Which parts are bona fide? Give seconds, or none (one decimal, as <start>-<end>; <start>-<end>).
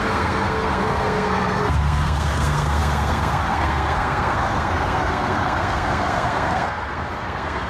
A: none